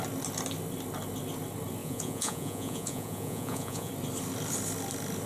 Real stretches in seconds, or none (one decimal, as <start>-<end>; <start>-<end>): 0.0-1.8; 3.9-5.3